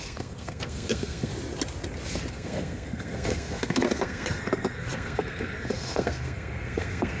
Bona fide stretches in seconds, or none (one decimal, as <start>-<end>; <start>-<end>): 1.3-2.3